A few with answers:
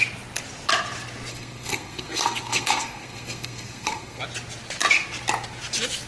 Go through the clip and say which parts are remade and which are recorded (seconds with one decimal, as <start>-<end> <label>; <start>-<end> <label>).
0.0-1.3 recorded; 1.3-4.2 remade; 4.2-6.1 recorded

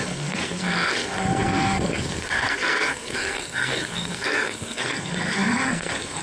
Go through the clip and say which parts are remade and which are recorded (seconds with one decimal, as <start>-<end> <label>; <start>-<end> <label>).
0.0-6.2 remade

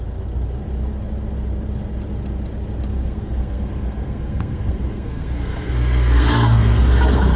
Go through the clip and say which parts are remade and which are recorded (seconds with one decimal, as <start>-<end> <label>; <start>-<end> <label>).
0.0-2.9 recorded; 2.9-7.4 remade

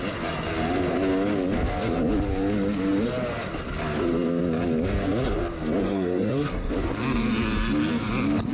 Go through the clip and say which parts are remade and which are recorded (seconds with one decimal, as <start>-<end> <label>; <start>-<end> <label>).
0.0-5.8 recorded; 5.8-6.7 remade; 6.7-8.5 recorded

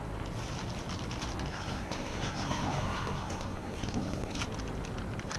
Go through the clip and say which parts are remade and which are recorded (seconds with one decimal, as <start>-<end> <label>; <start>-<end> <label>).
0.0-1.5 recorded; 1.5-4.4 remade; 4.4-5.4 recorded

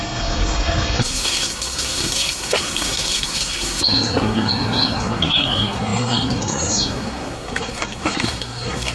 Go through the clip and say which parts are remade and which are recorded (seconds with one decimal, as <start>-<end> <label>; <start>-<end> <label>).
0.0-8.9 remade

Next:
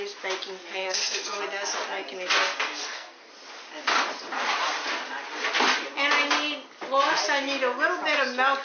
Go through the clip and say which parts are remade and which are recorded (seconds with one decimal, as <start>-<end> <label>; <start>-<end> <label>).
0.0-0.5 recorded; 0.5-1.4 remade; 1.4-2.4 recorded; 2.4-3.3 remade; 3.3-8.6 recorded